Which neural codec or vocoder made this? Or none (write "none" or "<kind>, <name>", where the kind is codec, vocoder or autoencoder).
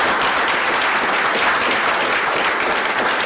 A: none